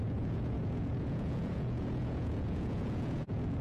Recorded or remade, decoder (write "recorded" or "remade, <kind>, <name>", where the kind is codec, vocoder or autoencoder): remade, vocoder, Vocos